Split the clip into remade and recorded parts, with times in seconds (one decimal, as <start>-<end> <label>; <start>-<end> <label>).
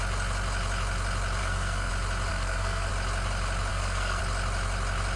0.0-1.4 recorded; 1.4-1.9 remade; 1.9-2.3 recorded; 2.3-2.9 remade; 2.9-3.7 recorded; 3.7-4.2 remade; 4.2-5.2 recorded